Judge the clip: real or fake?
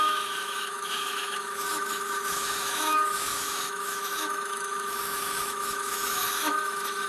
fake